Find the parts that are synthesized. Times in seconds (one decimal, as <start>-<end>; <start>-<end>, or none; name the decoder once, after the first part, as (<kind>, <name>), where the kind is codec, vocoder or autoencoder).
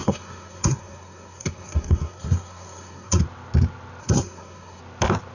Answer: 0.0-3.2 (codec, SNAC); 4.0-4.8